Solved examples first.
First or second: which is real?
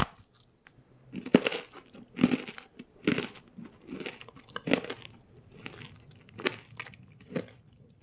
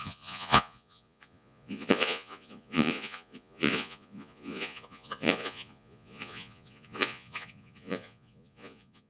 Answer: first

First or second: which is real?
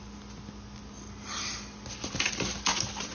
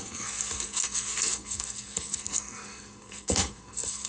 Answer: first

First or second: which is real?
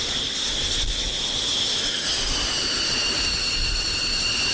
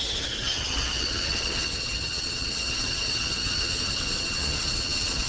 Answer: first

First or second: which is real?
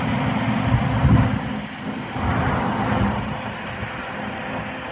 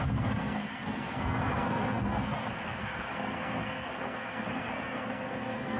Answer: first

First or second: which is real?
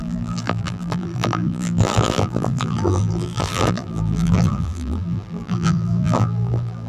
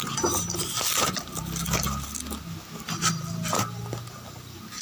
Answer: second